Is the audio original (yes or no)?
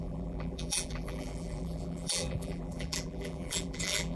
no